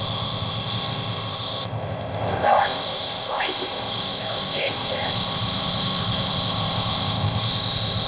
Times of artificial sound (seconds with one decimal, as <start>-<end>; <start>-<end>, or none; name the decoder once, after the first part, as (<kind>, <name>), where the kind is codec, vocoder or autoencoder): 0.0-8.1 (codec, ZipCodec)